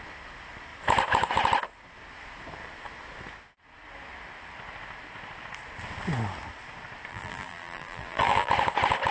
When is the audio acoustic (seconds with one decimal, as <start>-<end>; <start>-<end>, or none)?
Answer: 0.0-7.1; 8.5-9.1